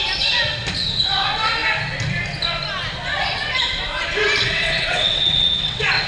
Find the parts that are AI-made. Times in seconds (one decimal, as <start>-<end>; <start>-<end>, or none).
4.4-6.1